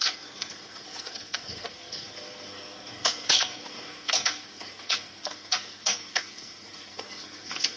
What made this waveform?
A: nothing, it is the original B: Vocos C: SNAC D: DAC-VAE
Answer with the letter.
C